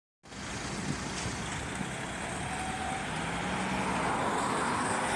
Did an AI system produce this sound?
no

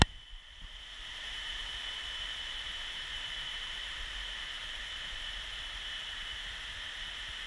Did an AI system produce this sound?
no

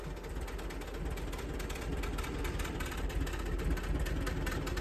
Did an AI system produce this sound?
no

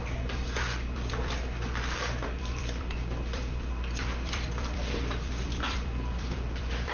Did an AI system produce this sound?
yes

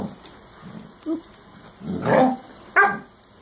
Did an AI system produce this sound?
no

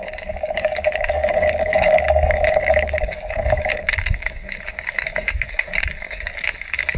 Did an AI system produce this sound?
yes